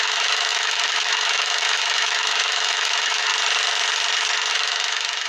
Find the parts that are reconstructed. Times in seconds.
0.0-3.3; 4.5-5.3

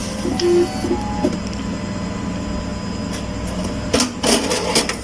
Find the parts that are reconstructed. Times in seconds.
none

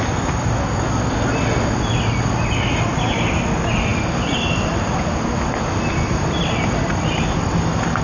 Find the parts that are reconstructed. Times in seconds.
none